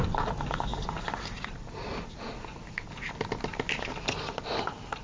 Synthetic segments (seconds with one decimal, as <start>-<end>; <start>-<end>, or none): none